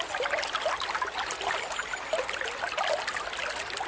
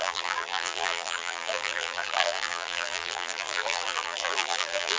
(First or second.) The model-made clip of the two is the second